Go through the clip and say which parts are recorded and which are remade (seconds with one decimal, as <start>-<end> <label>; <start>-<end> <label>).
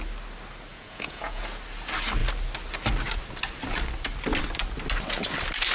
0.0-0.7 recorded; 0.7-1.4 remade; 1.4-5.7 recorded